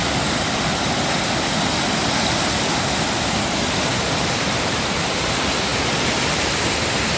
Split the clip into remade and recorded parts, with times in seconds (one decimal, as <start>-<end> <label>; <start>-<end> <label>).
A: 0.0-1.2 remade; 1.2-3.9 recorded; 3.9-5.1 remade; 5.1-7.2 recorded